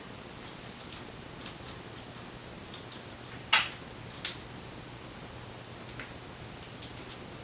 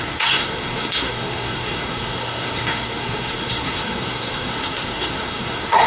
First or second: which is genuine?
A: first